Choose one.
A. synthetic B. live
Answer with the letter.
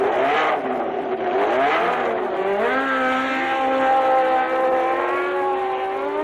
B